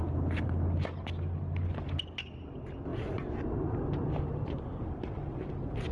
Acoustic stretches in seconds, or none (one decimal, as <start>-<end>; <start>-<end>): 0.0-5.9